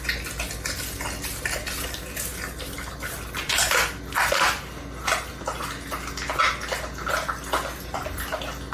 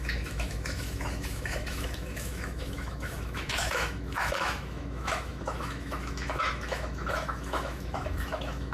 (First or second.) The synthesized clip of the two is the second